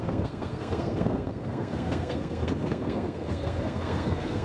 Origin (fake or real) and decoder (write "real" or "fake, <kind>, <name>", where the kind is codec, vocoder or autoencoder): fake, codec, SNAC